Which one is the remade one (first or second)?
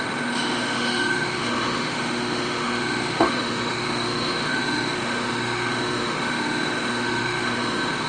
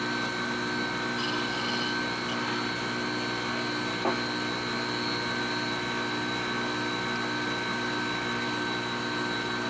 first